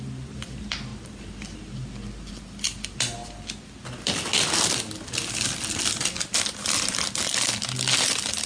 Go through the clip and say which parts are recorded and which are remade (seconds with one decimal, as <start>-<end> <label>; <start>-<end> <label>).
0.0-8.5 recorded